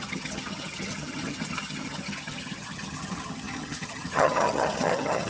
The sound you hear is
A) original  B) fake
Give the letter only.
B